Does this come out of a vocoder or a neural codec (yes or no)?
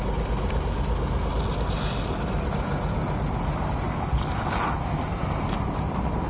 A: no